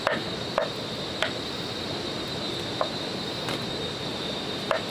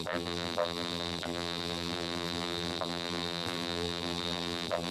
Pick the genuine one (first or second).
first